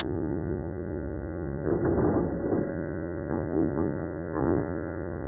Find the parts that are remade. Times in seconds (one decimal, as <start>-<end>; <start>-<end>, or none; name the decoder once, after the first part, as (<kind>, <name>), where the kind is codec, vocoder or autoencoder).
0.0-1.7 (vocoder, Vocos); 2.7-5.3